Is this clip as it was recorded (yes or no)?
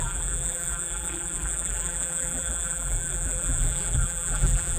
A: no